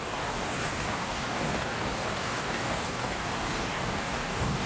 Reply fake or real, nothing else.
fake